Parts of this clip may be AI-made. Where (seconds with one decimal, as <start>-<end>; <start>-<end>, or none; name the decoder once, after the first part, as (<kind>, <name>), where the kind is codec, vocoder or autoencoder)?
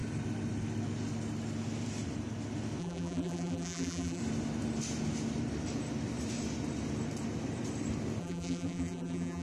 2.8-4.2 (vocoder, BigVGAN v2); 8.2-9.4